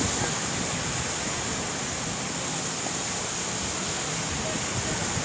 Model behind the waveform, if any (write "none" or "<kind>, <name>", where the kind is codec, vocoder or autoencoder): none